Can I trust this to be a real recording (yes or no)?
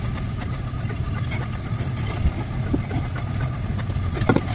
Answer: yes